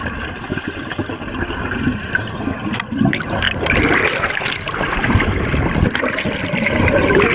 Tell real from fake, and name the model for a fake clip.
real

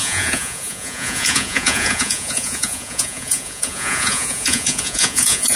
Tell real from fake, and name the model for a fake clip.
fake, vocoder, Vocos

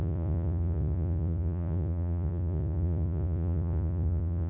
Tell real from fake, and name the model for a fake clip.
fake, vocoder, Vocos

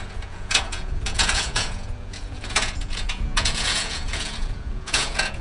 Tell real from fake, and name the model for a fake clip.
fake, vocoder, Vocos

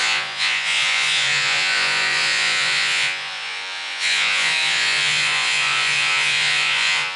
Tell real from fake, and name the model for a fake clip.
fake, vocoder, Vocos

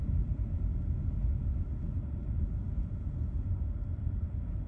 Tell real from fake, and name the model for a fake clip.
real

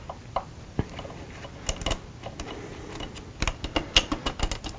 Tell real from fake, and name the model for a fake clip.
real